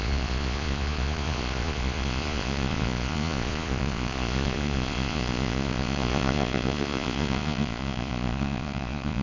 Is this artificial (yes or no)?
yes